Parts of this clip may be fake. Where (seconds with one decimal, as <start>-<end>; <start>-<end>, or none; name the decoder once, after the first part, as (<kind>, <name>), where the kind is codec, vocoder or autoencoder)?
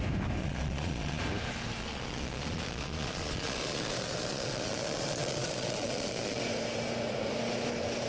0.4-1.2 (vocoder, Vocos); 1.8-6.4